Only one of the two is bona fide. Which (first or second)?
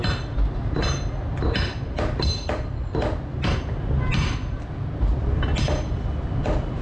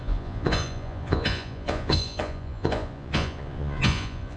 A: first